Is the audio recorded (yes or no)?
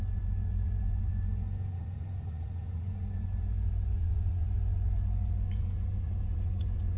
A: no